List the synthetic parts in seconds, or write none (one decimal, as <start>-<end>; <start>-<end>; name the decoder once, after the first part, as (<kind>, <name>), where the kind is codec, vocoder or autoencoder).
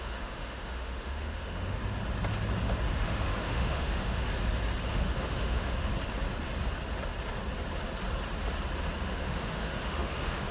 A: 0.0-1.8 (autoencoder, DAC-VAE); 2.9-4.3; 4.9-5.9; 9.0-10.5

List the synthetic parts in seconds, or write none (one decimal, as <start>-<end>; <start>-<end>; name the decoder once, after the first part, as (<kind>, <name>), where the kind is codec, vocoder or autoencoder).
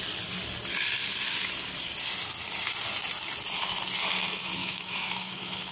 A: 4.6-5.7 (autoencoder, DAC-VAE)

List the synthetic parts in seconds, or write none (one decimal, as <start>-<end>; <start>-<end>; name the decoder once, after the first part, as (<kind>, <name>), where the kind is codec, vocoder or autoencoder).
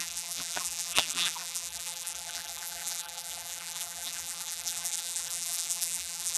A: 0.0-6.4 (vocoder, BigVGAN v2)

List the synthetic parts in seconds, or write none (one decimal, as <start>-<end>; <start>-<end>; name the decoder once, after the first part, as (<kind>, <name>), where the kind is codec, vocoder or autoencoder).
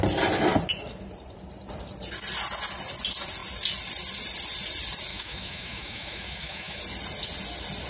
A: 5.1-6.8 (autoencoder, DAC-VAE)